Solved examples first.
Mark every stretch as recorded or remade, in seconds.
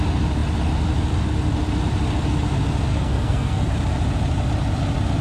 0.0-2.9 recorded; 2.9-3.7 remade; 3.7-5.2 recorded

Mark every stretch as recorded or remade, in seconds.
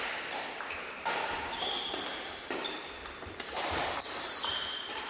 0.0-5.1 remade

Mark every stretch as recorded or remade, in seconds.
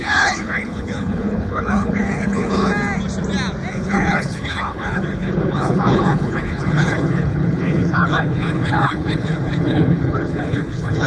0.0-2.7 remade; 2.7-3.7 recorded; 3.7-11.1 remade